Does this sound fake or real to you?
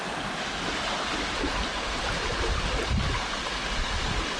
real